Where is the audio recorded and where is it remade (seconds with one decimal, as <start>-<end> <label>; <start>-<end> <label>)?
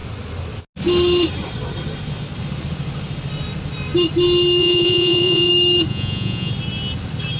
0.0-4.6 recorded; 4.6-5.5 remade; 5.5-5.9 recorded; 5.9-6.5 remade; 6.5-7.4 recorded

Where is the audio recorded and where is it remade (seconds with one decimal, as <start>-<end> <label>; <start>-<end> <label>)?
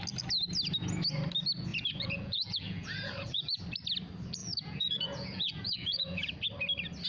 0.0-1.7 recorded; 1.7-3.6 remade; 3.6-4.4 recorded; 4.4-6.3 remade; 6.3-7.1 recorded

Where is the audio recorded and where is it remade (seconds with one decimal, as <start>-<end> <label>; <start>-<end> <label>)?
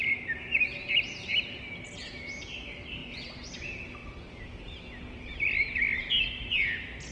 0.0-3.0 recorded; 3.0-3.5 remade; 3.5-7.1 recorded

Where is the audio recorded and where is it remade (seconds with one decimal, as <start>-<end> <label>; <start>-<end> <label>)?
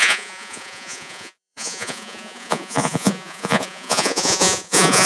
0.0-5.1 remade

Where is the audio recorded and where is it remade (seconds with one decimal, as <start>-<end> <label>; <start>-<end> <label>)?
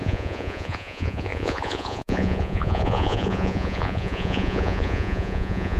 0.0-5.8 remade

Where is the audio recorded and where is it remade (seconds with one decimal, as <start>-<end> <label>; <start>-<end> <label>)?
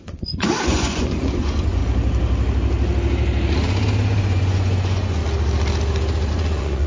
0.0-1.8 remade; 1.8-4.2 recorded; 4.2-5.2 remade; 5.2-6.3 recorded; 6.3-6.9 remade